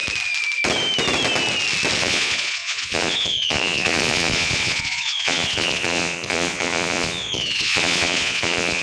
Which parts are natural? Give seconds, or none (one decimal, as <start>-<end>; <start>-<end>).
0.0-2.0